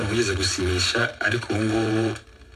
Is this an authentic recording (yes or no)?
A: no